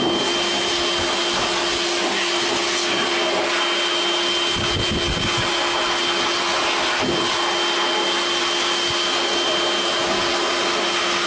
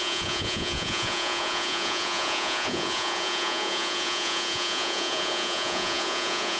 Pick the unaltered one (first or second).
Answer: first